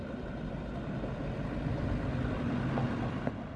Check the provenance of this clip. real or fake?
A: real